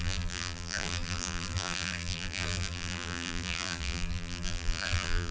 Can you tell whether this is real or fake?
fake